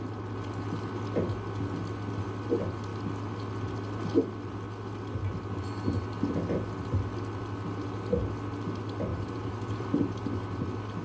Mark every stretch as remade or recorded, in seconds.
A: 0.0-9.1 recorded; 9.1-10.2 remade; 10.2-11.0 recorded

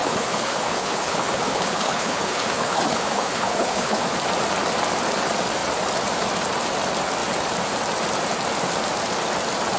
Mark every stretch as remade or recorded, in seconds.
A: 0.0-4.0 remade; 4.0-9.8 recorded

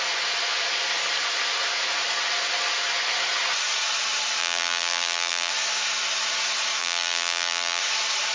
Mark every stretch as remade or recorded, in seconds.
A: 0.0-4.4 recorded; 4.4-5.5 remade; 5.5-6.8 recorded; 6.8-7.8 remade; 7.8-8.3 recorded

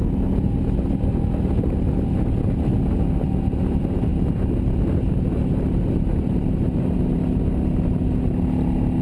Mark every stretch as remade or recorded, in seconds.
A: 0.0-9.0 recorded